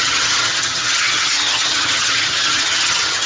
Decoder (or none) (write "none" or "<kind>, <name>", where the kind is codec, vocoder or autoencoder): vocoder, HiFi-GAN